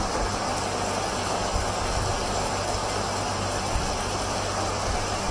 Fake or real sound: real